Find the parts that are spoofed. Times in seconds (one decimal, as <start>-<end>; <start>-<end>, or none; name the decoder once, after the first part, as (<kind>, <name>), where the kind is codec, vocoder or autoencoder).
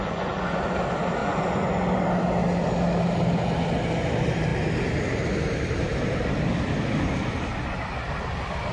0.0-0.7 (vocoder, Vocos); 1.2-2.0